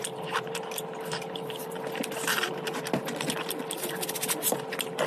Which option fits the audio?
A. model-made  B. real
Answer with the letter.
A